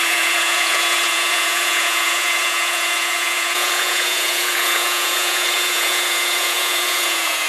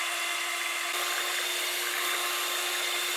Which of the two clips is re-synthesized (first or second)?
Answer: first